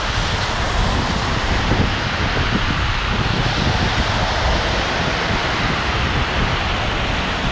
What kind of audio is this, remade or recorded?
recorded